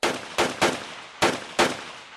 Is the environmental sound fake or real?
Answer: real